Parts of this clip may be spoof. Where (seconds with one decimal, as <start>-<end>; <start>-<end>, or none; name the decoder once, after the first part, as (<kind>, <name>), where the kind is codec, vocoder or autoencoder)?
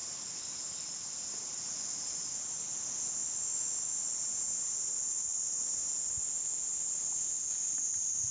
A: 0.0-3.2 (vocoder, Vocos); 5.9-8.3